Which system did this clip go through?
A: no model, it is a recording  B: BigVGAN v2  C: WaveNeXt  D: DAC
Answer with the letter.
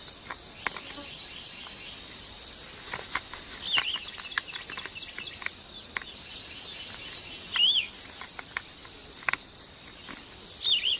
A